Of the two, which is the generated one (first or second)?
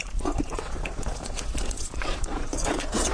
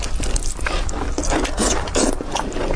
first